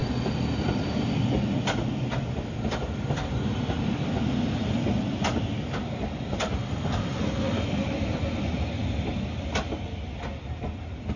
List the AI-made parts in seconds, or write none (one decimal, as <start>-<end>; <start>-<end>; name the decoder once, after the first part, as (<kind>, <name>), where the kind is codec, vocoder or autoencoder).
none